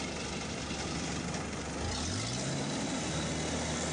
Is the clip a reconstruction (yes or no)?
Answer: no